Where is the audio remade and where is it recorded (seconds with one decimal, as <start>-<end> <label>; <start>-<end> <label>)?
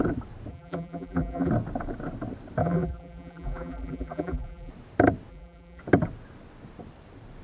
0.0-0.5 recorded; 0.5-1.5 remade; 1.5-2.6 recorded; 2.6-4.7 remade; 4.7-5.3 recorded; 5.3-5.8 remade; 5.8-7.4 recorded